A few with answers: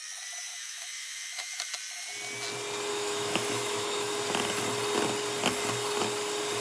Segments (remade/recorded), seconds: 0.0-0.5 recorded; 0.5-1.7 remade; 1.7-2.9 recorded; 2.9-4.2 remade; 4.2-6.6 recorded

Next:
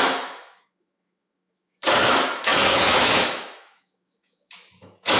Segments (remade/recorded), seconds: 0.0-5.2 remade

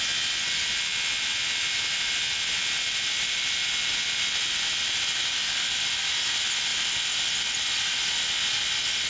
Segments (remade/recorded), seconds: 0.0-9.1 recorded